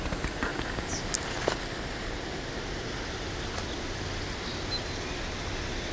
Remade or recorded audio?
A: recorded